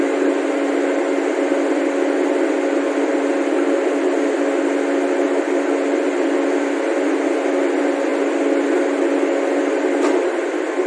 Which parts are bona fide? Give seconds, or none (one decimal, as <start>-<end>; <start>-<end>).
0.0-10.9